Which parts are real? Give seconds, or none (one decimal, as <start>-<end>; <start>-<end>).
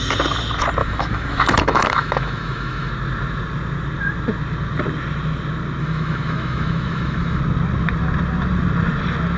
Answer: 0.0-0.8; 2.9-5.8; 7.4-9.4